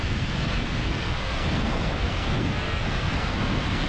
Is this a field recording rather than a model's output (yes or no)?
no